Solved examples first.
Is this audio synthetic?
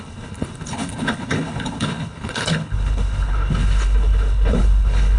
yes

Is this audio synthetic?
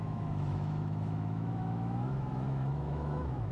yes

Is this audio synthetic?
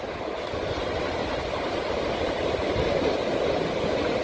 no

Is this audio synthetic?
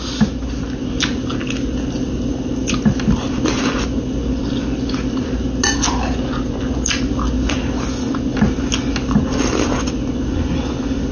no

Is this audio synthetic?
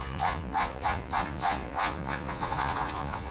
yes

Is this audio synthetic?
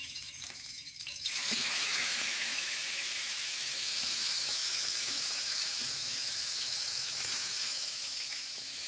yes